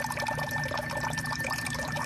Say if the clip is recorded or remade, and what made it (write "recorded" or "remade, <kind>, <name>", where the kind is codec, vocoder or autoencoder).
remade, vocoder, BigVGAN v2